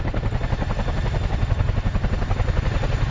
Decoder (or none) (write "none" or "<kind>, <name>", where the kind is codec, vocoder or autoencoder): none